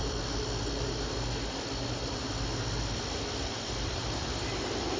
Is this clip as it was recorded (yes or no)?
yes